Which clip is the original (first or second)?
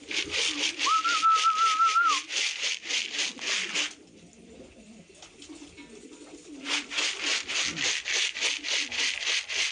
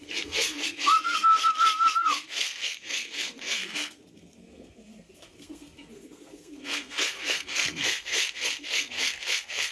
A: first